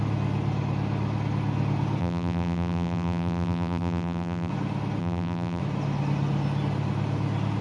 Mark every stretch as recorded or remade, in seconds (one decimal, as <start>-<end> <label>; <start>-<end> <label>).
0.0-2.0 recorded; 2.0-4.5 remade; 4.5-5.0 recorded; 5.0-5.6 remade; 5.6-7.6 recorded